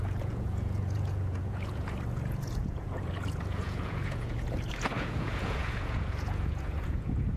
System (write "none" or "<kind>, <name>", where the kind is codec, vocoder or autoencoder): vocoder, Vocos